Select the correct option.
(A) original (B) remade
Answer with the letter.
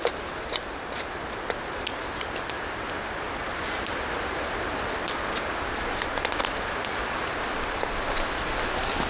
A